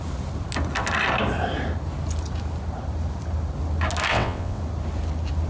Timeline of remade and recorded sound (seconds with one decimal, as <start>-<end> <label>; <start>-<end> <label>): 0.0-4.1 recorded; 4.1-4.6 remade; 4.6-5.5 recorded